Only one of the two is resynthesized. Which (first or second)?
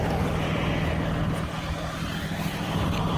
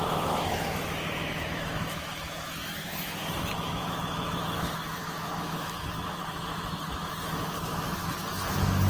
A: second